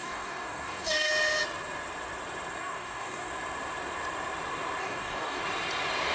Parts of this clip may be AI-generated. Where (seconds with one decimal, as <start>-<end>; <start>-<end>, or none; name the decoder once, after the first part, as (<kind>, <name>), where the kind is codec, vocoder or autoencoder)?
0.0-1.1 (codec, DAC); 2.6-3.3; 4.8-5.4